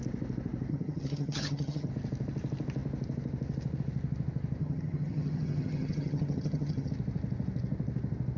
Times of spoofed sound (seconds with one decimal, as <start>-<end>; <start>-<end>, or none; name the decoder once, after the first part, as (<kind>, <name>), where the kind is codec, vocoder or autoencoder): 0.7-1.9 (vocoder, HiFi-GAN); 4.6-6.9